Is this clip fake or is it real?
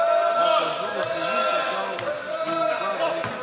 real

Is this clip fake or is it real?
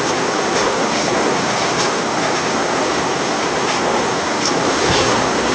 fake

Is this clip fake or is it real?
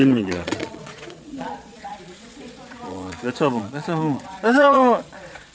fake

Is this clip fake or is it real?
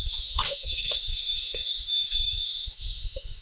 fake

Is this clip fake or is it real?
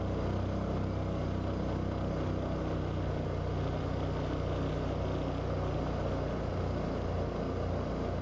real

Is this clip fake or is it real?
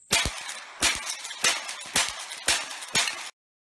real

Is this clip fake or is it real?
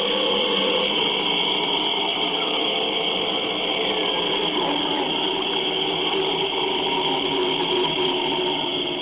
real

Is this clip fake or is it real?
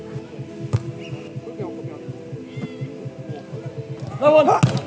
real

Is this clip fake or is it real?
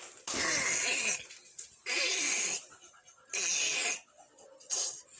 real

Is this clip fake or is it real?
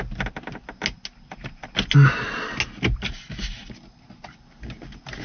real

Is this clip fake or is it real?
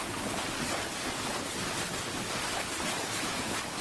real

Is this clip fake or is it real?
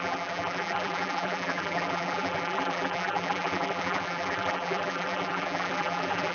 fake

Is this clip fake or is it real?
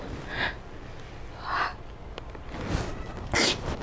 real